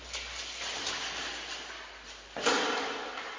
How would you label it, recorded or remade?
recorded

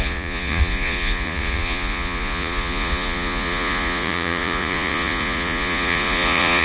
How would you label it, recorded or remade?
remade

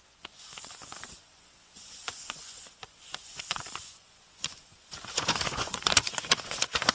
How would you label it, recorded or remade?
remade